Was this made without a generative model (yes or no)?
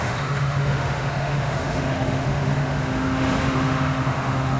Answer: no